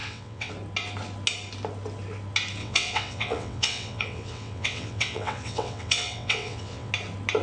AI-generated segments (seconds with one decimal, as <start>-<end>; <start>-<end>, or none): 0.0-0.5; 2.6-6.9